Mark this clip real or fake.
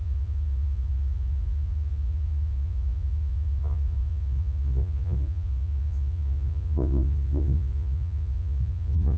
fake